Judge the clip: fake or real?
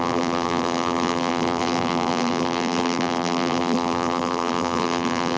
fake